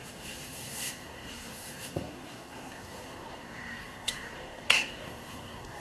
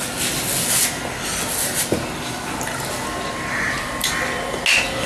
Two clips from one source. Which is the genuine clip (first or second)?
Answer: second